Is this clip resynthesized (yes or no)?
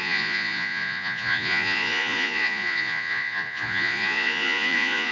yes